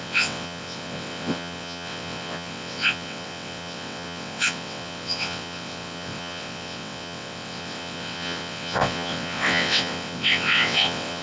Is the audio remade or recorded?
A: remade